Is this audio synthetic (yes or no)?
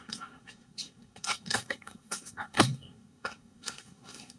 yes